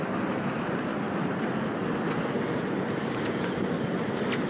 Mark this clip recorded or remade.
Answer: recorded